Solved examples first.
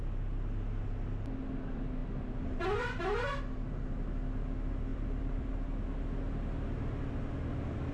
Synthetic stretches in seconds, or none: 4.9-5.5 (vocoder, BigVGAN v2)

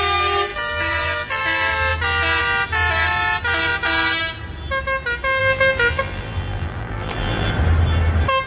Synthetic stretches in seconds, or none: 0.5-1.4 (vocoder, BigVGAN v2); 5.4-7.5

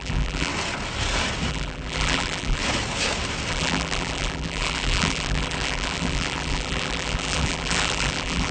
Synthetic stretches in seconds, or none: 0.0-0.5 (vocoder, BigVGAN v2); 1.5-2.6; 3.5-8.5

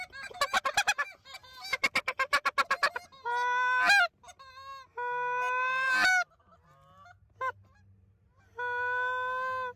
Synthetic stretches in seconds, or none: none

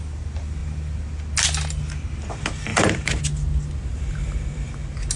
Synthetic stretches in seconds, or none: 2.7-3.2 (vocoder, BigVGAN v2); 3.9-4.7

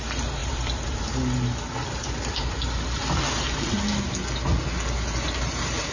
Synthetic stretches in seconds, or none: 0.4-1.2 (vocoder, BigVGAN v2); 2.0-3.0